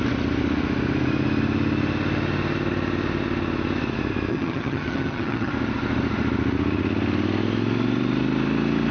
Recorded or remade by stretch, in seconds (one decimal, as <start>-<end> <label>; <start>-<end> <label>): 0.0-4.3 recorded; 4.3-5.5 remade; 5.5-8.9 recorded